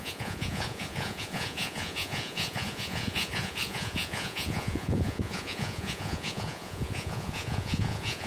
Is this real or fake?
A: fake